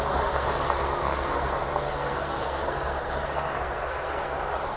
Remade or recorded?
remade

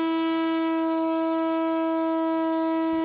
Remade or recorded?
recorded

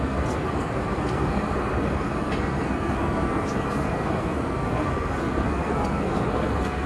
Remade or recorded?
remade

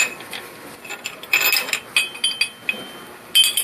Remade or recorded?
recorded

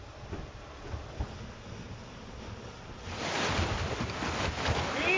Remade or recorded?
recorded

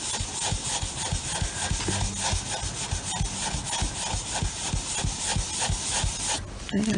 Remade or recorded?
recorded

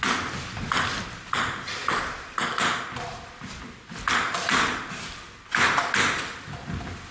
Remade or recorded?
recorded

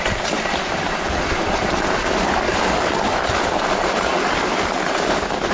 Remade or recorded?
recorded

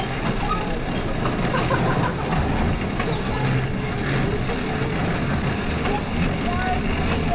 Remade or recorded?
recorded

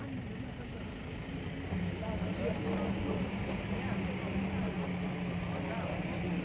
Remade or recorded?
recorded